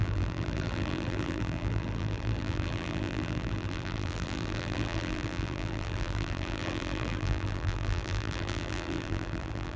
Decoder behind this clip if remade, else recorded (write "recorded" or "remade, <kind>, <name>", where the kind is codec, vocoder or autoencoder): remade, vocoder, BigVGAN v2